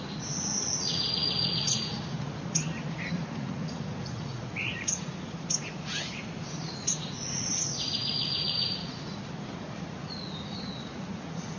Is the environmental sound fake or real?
fake